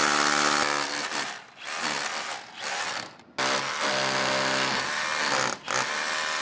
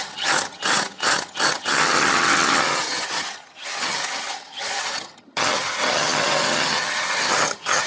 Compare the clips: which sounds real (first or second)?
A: first